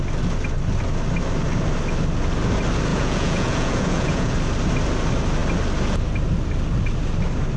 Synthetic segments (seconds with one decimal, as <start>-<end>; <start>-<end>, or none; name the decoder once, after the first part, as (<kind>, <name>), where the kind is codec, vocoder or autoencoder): 2.9-4.3 (vocoder, Vocos)